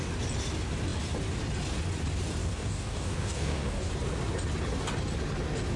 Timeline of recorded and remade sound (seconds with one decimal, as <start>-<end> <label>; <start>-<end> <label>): 0.0-2.4 recorded; 2.4-3.9 remade; 3.9-5.8 recorded